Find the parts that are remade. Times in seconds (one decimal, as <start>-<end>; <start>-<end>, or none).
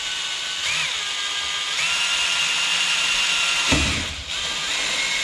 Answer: 2.7-3.5